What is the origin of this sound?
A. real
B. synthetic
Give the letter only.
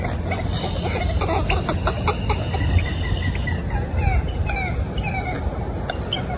A